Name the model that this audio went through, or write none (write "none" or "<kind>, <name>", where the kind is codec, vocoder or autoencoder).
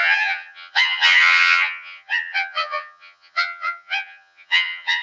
vocoder, HiFi-GAN